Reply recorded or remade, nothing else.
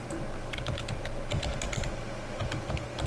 recorded